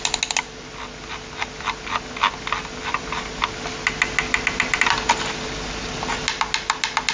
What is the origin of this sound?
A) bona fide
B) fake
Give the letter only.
A